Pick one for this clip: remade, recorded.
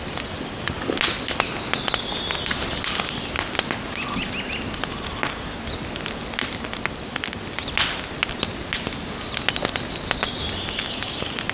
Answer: recorded